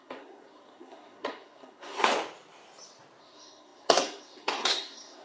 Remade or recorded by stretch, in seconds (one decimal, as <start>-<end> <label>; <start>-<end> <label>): 0.0-2.1 remade; 2.1-3.2 recorded; 3.2-5.2 remade